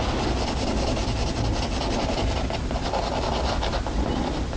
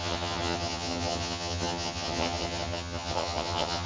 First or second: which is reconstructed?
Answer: second